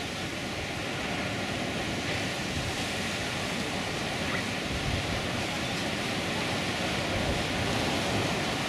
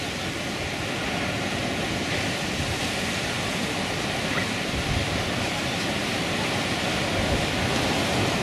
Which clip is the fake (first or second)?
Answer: second